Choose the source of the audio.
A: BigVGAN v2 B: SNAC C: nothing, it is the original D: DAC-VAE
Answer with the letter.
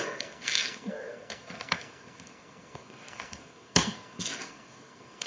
B